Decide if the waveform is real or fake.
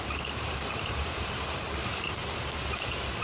fake